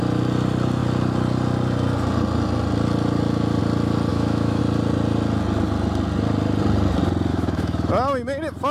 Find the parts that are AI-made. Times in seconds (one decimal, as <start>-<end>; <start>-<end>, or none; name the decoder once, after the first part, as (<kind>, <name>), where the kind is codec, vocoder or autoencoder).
4.1-4.6 (autoencoder, DAC-VAE); 7.3-7.9